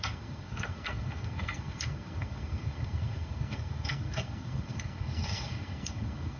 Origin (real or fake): fake